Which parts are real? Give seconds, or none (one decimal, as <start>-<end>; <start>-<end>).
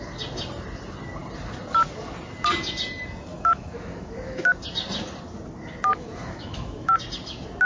0.0-3.3; 4.5-5.9; 6.9-7.7